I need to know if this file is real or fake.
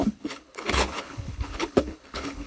fake